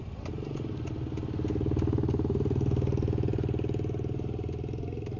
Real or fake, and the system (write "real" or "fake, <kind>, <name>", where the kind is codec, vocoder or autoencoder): real